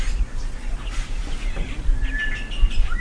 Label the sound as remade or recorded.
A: recorded